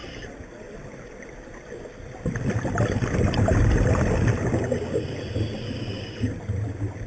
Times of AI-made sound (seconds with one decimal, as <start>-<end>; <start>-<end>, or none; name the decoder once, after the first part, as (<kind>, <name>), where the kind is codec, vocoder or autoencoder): none